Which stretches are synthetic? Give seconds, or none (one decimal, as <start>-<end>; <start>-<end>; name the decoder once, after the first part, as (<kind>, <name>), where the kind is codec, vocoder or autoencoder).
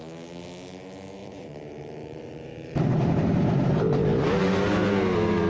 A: 1.2-4.5 (vocoder, BigVGAN v2)